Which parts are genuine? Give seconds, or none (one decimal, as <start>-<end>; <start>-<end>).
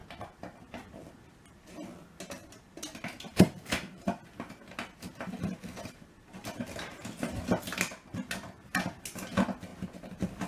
0.0-10.5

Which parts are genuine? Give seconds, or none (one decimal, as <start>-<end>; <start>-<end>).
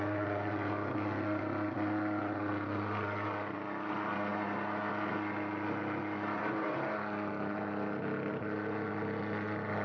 0.0-9.8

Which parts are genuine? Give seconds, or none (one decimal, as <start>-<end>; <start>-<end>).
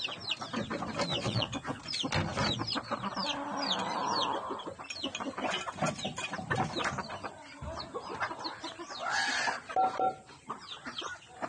0.0-1.1; 1.8-11.5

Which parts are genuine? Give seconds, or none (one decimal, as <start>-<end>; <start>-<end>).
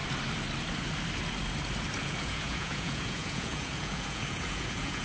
0.0-2.0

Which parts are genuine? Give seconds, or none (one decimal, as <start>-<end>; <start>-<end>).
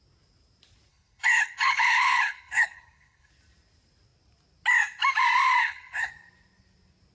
0.0-0.9; 3.3-5.6; 6.1-7.1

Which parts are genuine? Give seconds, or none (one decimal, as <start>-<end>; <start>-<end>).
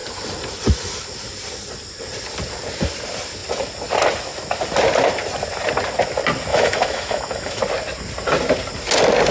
0.0-6.5; 7.6-9.3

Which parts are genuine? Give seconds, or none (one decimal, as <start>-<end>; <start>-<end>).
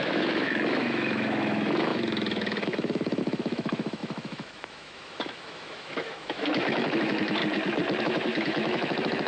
7.4-8.0